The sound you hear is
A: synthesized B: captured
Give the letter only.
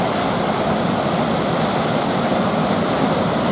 B